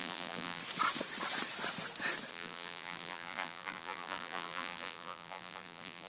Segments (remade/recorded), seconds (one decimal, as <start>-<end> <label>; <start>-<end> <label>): 0.0-0.6 remade; 0.6-2.3 recorded; 2.3-6.1 remade